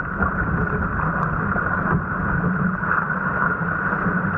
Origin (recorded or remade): recorded